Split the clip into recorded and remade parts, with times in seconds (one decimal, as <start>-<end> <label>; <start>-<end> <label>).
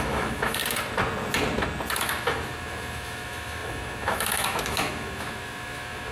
0.0-0.6 remade; 0.6-2.0 recorded; 2.0-6.1 remade